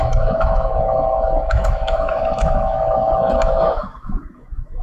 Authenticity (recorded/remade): remade